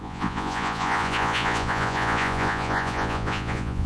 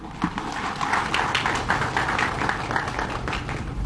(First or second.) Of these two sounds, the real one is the second